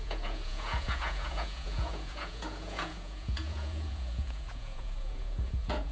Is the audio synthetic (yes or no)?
yes